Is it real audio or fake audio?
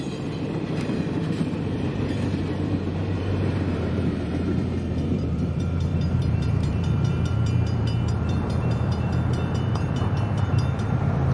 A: fake